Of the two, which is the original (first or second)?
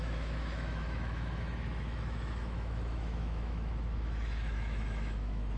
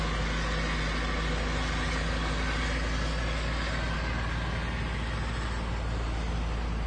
second